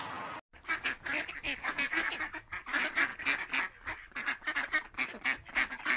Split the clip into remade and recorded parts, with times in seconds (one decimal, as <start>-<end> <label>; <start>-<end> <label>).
0.0-1.6 recorded; 1.6-2.1 remade; 2.1-6.0 recorded